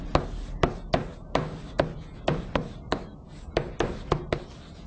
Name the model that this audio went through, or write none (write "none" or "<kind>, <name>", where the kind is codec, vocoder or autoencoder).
none